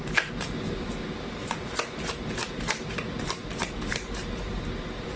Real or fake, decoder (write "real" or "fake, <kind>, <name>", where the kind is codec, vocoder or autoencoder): fake, vocoder, BigVGAN v2